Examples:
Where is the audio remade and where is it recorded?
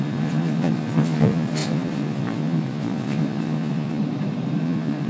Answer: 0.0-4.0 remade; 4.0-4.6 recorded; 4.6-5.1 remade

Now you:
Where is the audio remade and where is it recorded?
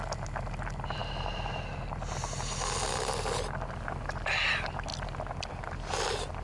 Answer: 0.0-6.4 recorded